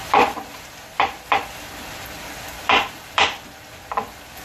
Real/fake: fake